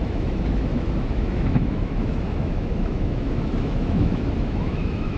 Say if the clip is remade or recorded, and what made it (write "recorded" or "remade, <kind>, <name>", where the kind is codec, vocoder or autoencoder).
remade, autoencoder, DAC-VAE